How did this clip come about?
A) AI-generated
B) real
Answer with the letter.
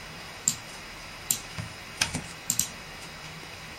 A